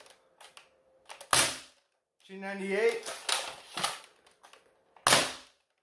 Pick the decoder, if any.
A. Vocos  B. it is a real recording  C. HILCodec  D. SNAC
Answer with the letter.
B